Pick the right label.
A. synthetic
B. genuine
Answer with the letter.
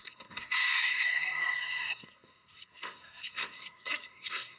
A